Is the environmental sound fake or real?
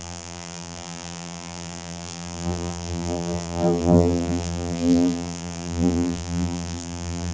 fake